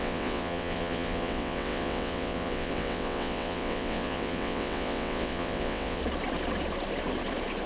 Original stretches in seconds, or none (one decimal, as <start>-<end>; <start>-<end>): 6.0-7.7